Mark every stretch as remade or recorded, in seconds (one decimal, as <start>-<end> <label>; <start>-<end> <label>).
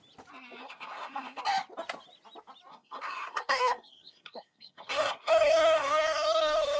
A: 0.0-0.6 recorded; 0.6-1.4 remade; 1.4-2.7 recorded; 2.7-6.8 remade